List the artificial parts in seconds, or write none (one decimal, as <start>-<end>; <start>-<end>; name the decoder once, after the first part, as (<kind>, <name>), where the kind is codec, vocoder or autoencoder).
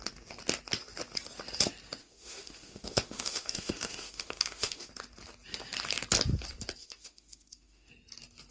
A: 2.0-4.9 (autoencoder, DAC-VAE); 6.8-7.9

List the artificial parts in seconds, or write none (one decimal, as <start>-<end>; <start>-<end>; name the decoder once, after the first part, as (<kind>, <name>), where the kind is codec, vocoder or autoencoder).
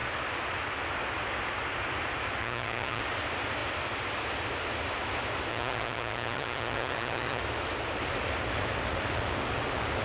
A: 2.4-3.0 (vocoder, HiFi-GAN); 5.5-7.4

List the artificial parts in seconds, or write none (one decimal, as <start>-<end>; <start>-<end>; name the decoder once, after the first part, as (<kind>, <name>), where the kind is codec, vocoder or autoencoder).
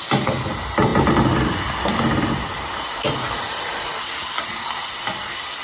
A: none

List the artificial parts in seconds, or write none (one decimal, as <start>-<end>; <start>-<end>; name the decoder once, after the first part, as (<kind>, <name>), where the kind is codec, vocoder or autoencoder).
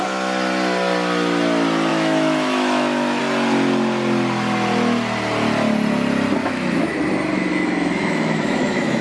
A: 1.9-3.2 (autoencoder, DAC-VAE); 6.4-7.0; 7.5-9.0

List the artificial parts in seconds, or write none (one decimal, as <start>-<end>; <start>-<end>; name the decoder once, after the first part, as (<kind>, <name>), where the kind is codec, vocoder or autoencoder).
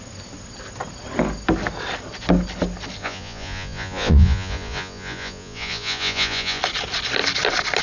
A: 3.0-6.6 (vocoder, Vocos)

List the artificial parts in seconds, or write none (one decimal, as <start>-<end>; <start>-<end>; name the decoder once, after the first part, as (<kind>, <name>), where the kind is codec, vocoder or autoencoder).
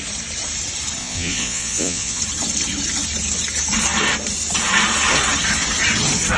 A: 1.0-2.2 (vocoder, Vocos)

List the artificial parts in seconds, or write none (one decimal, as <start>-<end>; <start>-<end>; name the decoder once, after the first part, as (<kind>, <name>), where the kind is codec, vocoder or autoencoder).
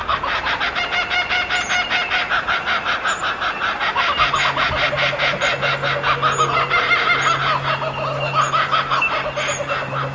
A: none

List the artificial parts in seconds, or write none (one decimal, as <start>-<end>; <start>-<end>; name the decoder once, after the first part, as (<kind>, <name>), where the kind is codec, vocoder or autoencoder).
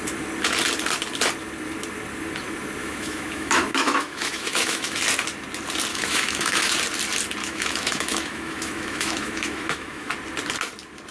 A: 2.8-5.0 (autoencoder, DAC-VAE); 5.9-6.7; 7.4-10.1